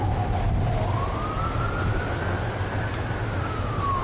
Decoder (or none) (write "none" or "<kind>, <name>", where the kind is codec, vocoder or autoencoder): none